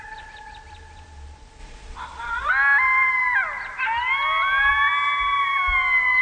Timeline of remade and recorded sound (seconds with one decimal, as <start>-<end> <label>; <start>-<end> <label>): 0.0-1.6 recorded; 1.6-2.5 remade; 2.5-6.2 recorded